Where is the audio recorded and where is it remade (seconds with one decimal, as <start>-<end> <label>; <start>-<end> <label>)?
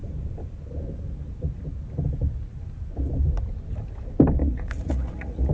0.0-4.4 recorded; 4.4-5.5 remade